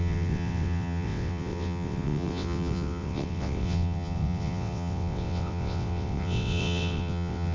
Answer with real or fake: fake